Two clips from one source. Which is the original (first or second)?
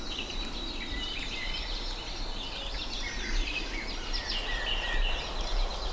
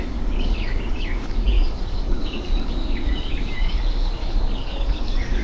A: first